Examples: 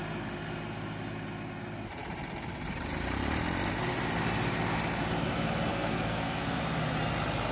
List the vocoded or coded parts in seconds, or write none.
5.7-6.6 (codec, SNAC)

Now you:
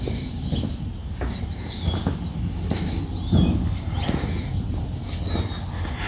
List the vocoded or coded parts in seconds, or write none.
none